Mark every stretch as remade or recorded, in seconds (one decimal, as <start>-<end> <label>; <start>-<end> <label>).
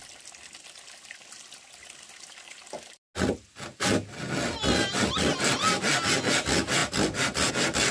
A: 0.0-7.9 recorded